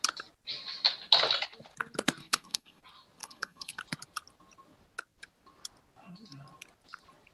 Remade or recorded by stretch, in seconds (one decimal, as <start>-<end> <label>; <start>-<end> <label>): 0.0-2.2 recorded; 2.2-2.8 remade; 2.8-3.2 recorded; 3.2-3.8 remade; 3.8-7.3 recorded